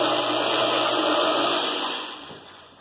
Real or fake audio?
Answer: fake